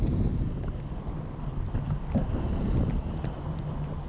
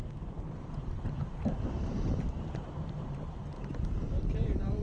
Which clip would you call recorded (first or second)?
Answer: first